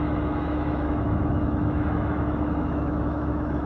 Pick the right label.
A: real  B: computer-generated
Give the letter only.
B